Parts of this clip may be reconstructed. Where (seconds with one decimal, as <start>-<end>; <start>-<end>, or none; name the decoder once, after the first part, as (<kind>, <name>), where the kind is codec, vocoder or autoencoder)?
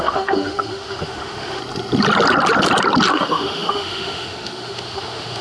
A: 0.0-1.6 (autoencoder, DAC-VAE); 3.1-5.4